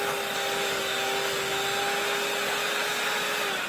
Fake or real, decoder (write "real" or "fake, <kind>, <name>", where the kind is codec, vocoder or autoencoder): real